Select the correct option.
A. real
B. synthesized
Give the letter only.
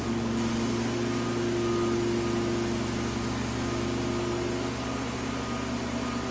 A